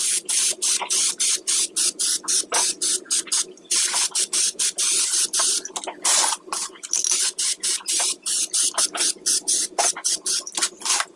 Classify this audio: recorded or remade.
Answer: recorded